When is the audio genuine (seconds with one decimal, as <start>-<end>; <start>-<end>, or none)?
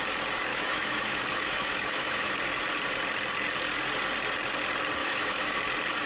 0.0-0.5; 2.3-5.0; 5.6-6.1